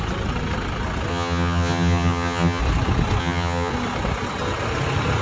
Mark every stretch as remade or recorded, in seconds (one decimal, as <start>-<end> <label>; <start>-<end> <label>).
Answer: 0.0-1.1 recorded; 1.1-2.6 remade; 2.6-3.2 recorded; 3.2-3.7 remade; 3.7-5.2 recorded